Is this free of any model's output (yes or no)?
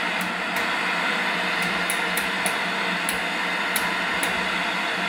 yes